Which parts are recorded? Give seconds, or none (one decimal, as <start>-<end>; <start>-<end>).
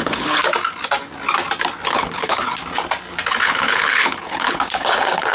0.4-1.9; 2.5-3.4